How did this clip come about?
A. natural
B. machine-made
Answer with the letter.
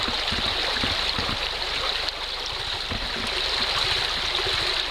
A